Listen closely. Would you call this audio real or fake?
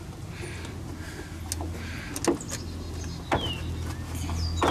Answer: real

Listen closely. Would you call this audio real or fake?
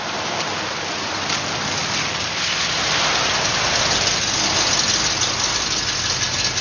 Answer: real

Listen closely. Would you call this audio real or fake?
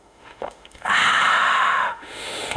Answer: fake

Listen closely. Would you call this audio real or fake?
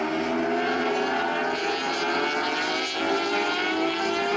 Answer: real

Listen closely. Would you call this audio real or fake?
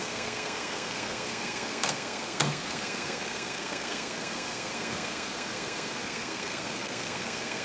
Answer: fake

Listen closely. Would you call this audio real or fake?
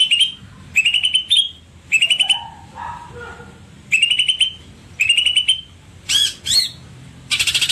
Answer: fake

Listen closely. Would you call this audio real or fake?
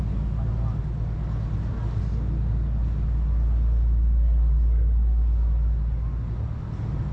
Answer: real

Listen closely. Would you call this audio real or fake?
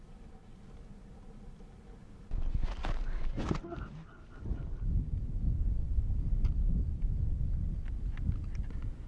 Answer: real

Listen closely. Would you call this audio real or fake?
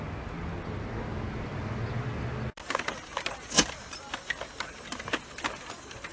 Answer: real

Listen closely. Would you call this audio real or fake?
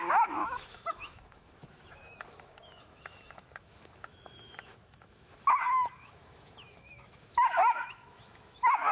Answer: fake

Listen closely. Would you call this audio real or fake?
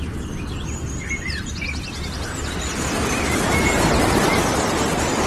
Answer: real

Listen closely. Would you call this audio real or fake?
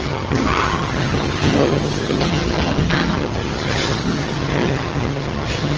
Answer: fake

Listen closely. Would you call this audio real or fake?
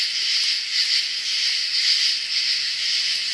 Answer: real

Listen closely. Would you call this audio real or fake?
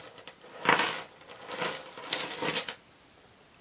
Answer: real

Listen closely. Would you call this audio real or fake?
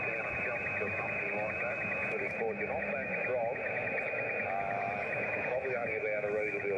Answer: fake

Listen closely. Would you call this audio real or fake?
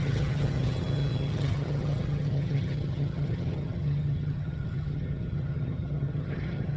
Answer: fake